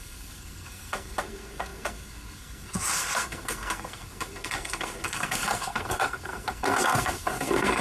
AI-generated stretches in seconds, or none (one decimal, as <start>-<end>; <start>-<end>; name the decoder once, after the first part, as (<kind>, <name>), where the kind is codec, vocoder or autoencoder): 0.0-7.8 (codec, SNAC)